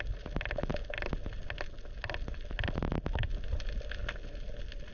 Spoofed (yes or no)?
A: no